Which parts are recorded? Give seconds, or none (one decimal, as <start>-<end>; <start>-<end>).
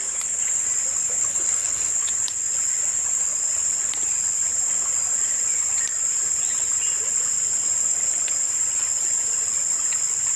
0.0-1.2; 1.9-10.4